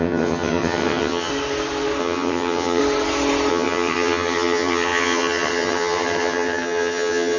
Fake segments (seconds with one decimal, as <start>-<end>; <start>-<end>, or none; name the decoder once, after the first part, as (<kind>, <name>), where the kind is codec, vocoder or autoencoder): 0.0-1.3 (vocoder, HiFi-GAN); 2.0-2.8; 3.5-7.4